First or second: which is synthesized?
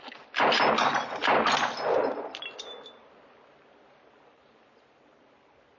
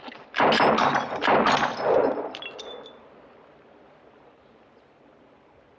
second